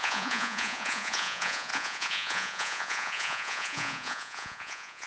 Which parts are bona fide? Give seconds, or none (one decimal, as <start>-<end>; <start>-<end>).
none